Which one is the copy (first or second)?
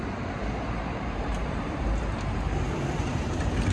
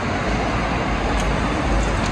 first